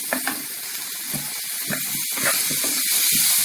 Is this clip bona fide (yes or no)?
yes